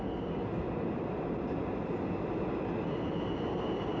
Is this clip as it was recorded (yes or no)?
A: yes